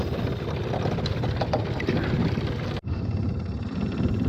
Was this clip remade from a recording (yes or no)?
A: no